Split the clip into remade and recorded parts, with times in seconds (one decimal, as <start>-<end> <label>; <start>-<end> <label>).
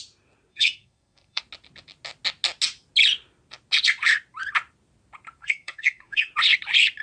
0.0-0.5 recorded; 0.5-1.4 remade; 1.4-5.4 recorded; 5.4-6.3 remade; 6.3-7.0 recorded